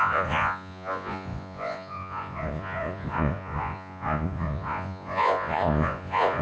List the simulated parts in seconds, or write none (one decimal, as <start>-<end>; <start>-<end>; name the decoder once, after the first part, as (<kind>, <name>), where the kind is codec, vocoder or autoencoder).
0.0-6.4 (vocoder, Vocos)